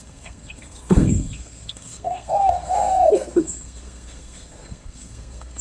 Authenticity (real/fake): fake